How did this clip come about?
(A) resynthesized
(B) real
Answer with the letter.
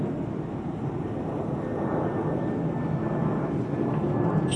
A